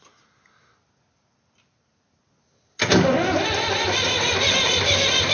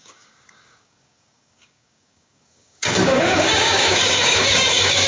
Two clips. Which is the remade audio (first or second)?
second